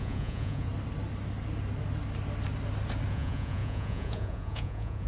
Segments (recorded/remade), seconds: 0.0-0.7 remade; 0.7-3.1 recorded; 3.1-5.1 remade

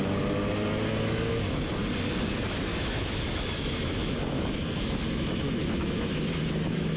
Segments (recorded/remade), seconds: 0.0-0.9 recorded; 0.9-1.7 remade; 1.7-2.7 recorded; 2.7-7.0 remade

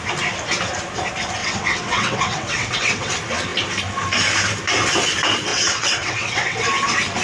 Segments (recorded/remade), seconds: 0.0-1.4 recorded; 1.4-3.1 remade; 3.1-5.5 recorded; 5.5-6.6 remade; 6.6-7.2 recorded

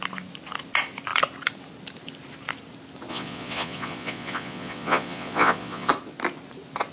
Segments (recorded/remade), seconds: 0.0-3.1 recorded; 3.1-5.9 remade; 5.9-6.9 recorded

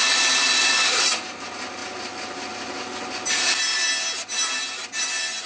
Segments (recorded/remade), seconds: 0.0-5.5 recorded

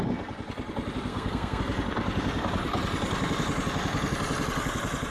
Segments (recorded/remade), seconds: 0.0-1.1 recorded; 1.1-1.6 remade; 1.6-5.1 recorded